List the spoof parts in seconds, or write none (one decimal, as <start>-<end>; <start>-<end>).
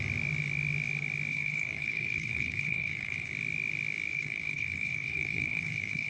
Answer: 1.3-3.3; 4.1-6.1